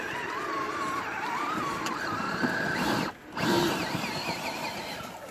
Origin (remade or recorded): remade